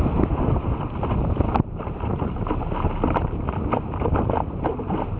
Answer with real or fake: real